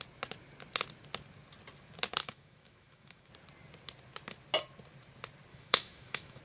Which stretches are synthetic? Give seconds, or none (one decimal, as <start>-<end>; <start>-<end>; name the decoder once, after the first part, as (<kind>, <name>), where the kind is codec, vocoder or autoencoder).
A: 2.2-3.3 (autoencoder, DAC-VAE); 5.5-6.4